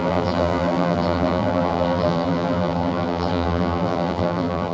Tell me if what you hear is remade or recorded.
remade